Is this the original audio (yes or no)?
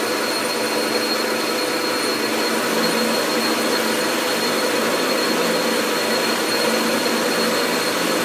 yes